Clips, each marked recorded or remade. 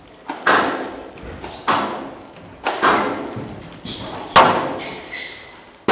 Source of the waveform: recorded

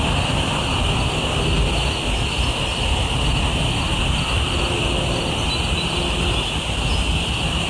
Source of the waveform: recorded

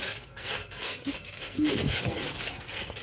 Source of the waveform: remade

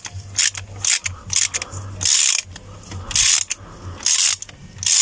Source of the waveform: recorded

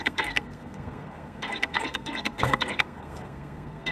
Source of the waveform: remade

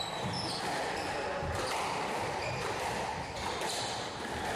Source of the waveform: recorded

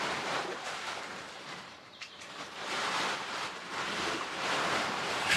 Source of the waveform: remade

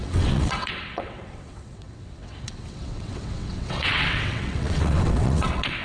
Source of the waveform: remade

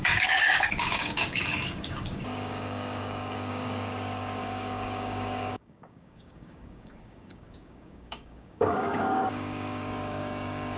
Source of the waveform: remade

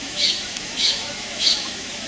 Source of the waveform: remade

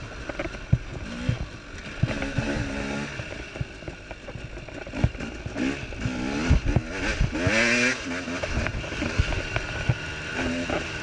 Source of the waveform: recorded